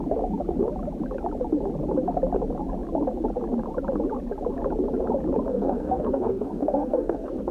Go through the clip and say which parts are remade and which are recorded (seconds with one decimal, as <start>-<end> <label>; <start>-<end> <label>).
0.0-5.5 recorded; 5.5-7.5 remade

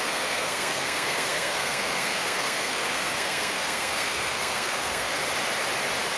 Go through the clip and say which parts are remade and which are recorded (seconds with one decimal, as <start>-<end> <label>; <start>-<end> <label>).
0.0-5.2 remade; 5.2-6.2 recorded

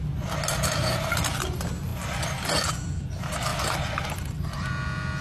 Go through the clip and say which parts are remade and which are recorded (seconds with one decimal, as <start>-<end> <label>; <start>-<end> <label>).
0.0-5.2 recorded

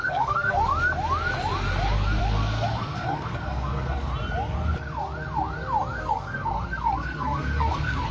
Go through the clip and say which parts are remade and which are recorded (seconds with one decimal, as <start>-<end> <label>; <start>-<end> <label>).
0.0-0.7 remade; 0.7-2.2 recorded; 2.2-4.1 remade; 4.1-6.0 recorded; 6.0-8.1 remade

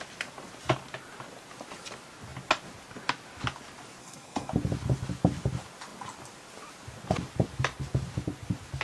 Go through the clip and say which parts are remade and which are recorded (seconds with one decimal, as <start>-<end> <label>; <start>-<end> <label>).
0.0-4.0 recorded; 4.0-4.5 remade; 4.5-8.8 recorded

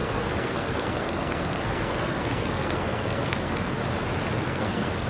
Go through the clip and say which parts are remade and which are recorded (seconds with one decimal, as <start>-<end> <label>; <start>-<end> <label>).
0.0-3.8 remade; 3.8-4.4 recorded; 4.4-5.1 remade